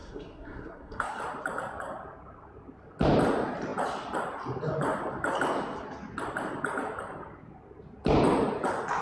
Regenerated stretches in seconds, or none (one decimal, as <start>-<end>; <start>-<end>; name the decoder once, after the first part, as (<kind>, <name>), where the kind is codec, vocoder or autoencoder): 0.0-1.2 (codec, SNAC)